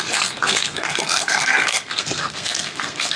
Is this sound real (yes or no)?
no